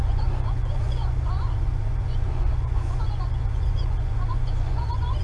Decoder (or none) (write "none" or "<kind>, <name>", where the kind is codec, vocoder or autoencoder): vocoder, Vocos